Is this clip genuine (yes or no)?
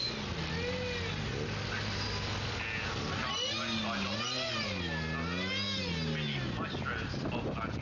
yes